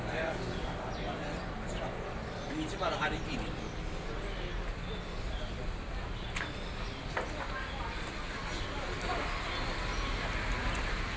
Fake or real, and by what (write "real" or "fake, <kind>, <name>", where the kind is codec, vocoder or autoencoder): real